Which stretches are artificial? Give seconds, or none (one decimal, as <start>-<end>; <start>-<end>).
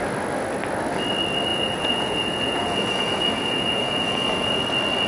1.5-4.6